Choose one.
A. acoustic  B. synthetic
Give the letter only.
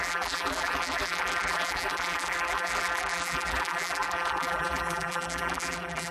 B